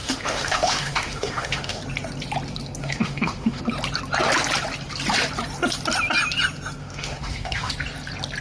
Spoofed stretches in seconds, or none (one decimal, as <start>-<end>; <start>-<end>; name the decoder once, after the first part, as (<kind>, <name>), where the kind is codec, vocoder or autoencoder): 0.0-1.8 (autoencoder, DAC-VAE); 2.8-3.6; 6.8-7.7